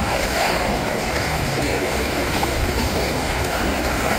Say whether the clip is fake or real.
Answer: fake